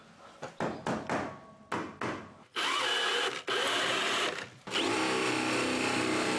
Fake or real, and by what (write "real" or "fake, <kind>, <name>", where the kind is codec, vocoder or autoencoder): real